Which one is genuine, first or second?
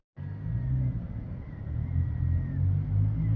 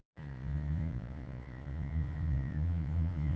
first